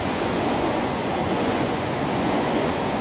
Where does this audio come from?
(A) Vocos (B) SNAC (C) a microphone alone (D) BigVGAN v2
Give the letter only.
A